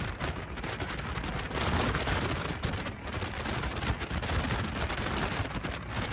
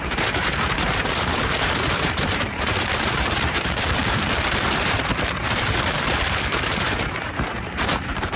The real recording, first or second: first